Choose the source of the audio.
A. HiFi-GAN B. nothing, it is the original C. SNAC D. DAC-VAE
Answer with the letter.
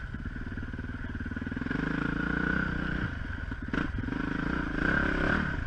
B